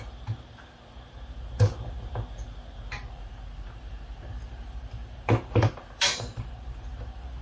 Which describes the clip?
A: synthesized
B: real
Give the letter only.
A